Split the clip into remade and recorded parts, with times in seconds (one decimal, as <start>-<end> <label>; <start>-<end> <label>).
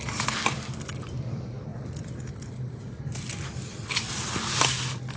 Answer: 0.0-5.2 recorded